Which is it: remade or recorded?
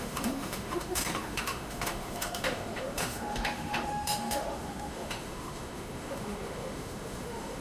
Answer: remade